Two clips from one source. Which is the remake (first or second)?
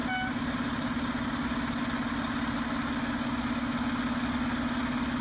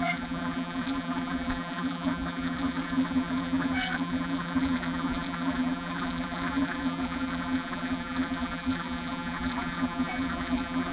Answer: second